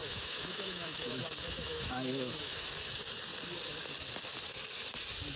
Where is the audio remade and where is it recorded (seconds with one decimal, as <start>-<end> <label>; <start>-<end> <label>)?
0.0-2.7 remade; 2.7-5.4 recorded